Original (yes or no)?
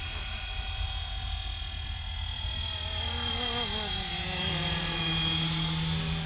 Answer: yes